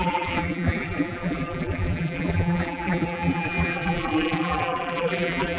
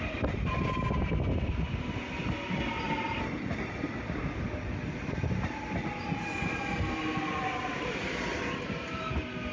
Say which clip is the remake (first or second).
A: first